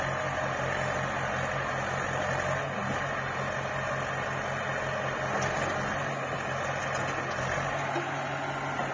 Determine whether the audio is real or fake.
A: real